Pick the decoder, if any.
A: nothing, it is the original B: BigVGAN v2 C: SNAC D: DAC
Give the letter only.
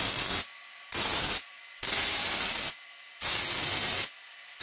A